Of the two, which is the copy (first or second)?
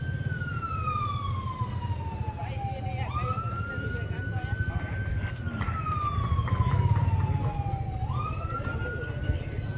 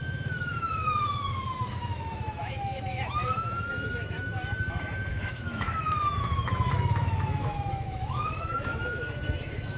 second